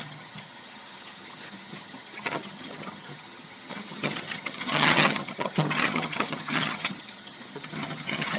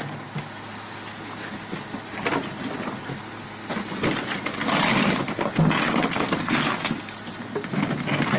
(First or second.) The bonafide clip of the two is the second